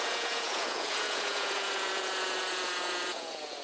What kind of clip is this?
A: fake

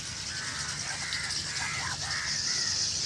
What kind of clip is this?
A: real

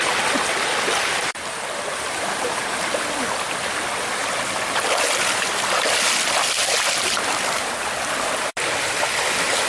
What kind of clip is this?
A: real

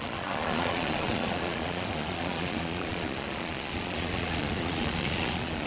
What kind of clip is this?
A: fake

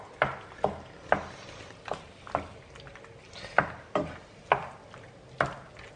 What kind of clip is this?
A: real